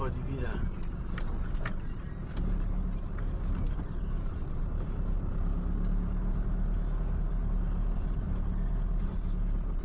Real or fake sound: real